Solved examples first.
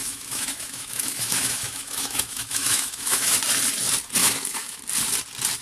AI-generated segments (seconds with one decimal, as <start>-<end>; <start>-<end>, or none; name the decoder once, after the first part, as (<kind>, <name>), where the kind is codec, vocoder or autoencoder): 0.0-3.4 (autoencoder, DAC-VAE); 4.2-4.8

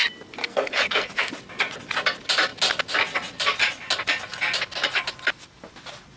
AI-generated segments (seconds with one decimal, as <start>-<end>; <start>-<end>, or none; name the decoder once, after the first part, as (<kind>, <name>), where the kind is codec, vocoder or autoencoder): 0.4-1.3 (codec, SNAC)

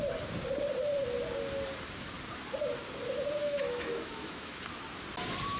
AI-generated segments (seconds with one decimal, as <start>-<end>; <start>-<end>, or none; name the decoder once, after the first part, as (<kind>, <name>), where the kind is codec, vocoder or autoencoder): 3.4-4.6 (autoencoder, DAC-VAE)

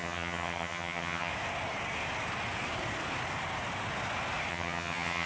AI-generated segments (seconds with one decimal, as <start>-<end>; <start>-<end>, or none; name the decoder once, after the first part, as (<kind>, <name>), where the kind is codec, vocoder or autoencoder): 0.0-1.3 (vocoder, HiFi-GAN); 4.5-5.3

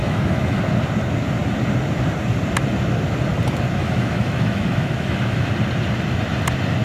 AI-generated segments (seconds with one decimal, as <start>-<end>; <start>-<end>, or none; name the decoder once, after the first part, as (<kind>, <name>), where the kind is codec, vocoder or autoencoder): 0.0-0.6 (autoencoder, DAC-VAE); 3.8-5.5

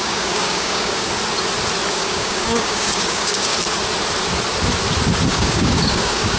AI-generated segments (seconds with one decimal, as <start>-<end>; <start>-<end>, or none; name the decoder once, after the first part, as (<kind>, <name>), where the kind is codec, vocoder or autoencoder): 0.0-1.1 (codec, DAC); 1.9-3.5; 5.3-6.4